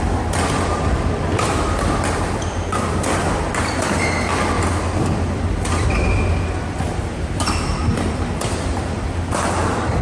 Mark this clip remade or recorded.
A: recorded